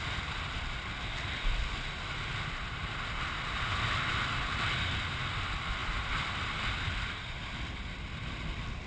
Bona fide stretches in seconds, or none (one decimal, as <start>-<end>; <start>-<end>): 0.0-8.9